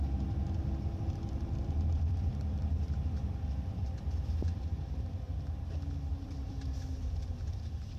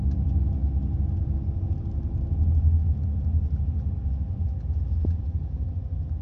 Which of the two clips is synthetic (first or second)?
first